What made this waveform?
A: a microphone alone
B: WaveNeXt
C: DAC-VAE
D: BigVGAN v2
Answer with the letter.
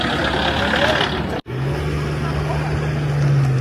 A